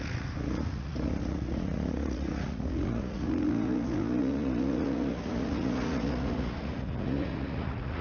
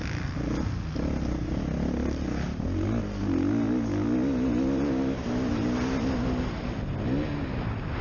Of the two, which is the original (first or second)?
second